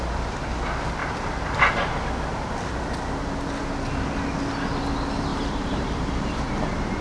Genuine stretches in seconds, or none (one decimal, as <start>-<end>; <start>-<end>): 0.0-1.0; 1.9-5.3; 6.5-7.0

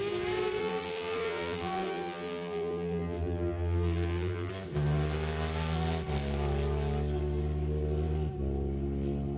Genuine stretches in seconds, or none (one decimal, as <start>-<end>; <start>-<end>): 0.0-0.6; 4.5-9.4